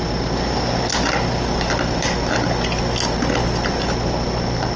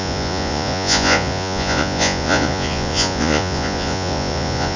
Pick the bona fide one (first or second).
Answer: first